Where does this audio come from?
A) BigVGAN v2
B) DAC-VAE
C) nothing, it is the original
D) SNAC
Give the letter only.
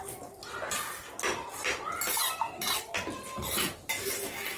C